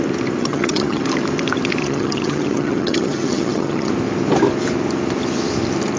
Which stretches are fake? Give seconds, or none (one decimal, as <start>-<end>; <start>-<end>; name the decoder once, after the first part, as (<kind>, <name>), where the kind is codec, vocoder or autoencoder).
0.4-1.0 (vocoder, HiFi-GAN); 1.8-3.9